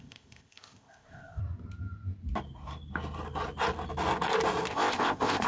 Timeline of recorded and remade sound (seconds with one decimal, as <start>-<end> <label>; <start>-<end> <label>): 0.0-1.4 remade; 1.4-4.7 recorded; 4.7-5.5 remade